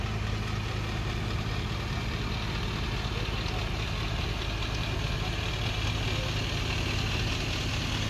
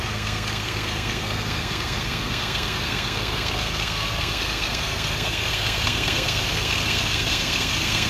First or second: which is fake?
second